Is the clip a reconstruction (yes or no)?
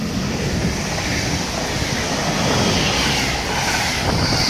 no